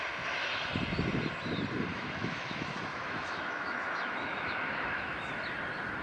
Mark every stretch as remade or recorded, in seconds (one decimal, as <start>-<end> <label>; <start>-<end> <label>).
0.0-1.9 recorded; 1.9-5.3 remade; 5.3-6.0 recorded